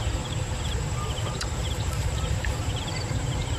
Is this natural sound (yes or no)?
no